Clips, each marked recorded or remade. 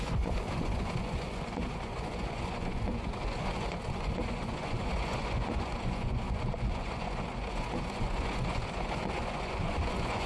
remade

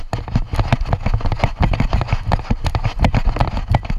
recorded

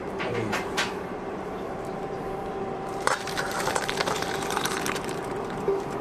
remade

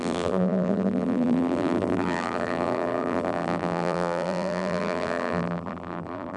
remade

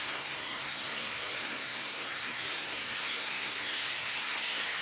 remade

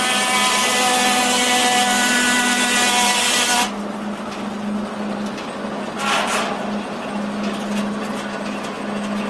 recorded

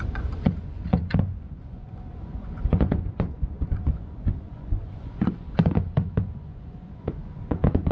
remade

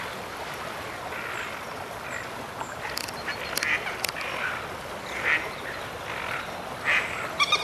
recorded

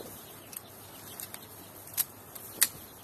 recorded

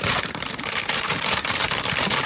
remade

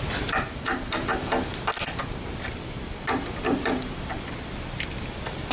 recorded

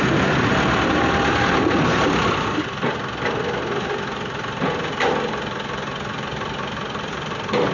remade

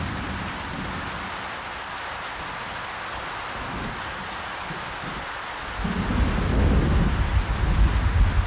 recorded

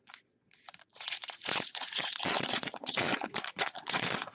remade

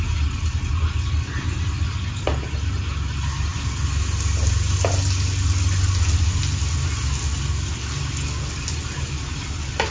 recorded